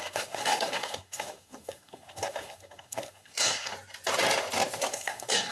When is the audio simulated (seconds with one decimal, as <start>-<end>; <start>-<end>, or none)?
0.0-3.7; 4.9-5.5